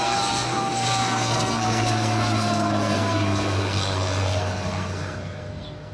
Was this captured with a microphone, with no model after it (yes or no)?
no